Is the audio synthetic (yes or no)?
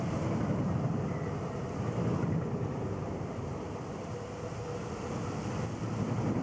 no